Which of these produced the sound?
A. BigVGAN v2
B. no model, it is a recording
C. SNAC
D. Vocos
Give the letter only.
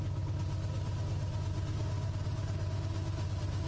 B